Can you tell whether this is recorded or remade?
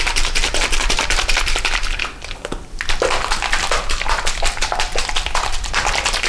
recorded